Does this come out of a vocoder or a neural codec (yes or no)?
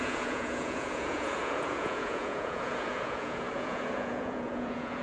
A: yes